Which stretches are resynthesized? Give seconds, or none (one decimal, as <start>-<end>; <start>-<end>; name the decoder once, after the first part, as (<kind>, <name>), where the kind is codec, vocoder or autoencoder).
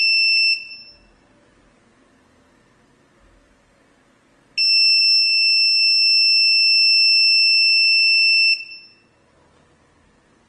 none